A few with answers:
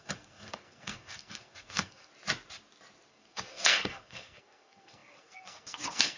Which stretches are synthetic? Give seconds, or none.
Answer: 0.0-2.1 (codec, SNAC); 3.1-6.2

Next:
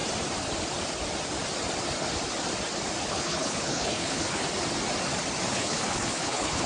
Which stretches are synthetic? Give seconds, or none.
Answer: 3.1-4.5 (codec, HILCodec); 5.5-6.7

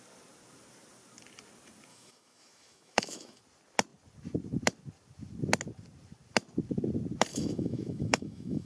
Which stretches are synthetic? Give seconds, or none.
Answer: 1.9-3.4 (autoencoder, DAC-VAE); 7.3-8.7

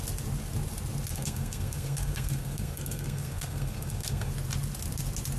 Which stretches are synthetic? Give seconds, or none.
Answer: 1.1-4.3 (codec, SNAC)

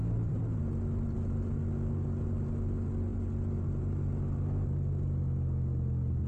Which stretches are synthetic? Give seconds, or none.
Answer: 0.0-0.6 (vocoder, BigVGAN v2)

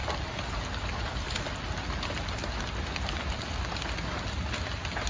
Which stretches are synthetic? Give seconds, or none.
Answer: none

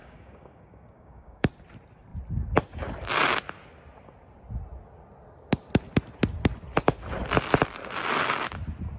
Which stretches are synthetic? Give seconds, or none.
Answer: 0.0-1.5 (codec, DAC)

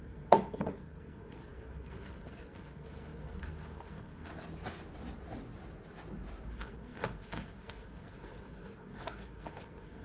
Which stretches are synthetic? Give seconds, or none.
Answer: 0.0-4.3 (codec, SNAC); 6.5-10.0